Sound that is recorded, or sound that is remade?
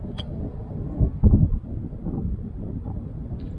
remade